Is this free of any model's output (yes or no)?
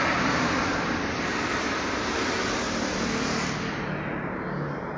yes